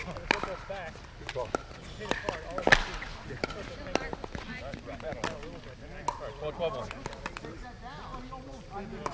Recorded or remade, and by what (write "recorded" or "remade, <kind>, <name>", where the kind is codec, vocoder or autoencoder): recorded